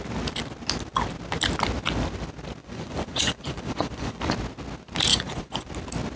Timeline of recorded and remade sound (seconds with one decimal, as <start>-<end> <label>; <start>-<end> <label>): 0.0-2.6 recorded; 2.6-4.2 remade; 4.2-5.1 recorded; 5.1-5.7 remade; 5.7-6.2 recorded